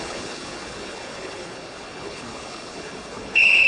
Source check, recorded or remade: remade